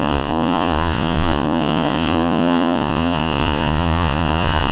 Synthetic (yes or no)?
yes